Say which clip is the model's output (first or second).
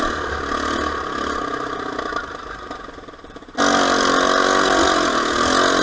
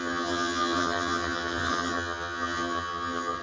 second